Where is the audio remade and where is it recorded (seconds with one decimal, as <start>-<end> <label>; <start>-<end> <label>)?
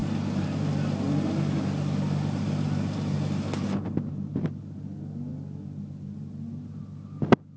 0.0-7.6 recorded